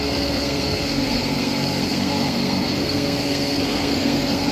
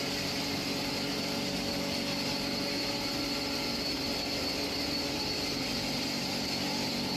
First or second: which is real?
second